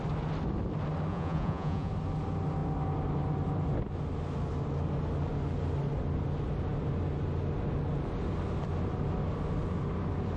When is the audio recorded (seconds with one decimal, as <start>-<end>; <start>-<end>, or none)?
0.0-1.1; 1.9-10.4